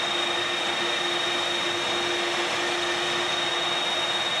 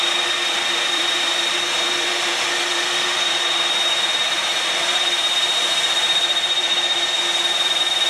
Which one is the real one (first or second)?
first